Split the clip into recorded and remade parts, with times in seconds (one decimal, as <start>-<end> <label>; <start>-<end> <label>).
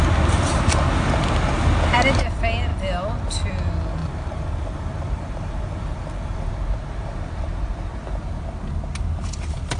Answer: 0.0-4.0 recorded; 4.0-6.5 remade; 6.5-9.8 recorded